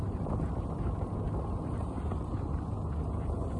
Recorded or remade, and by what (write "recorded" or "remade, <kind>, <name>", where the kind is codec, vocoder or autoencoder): recorded